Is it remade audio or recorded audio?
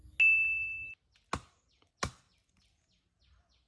recorded